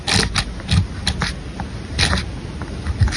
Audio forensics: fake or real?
real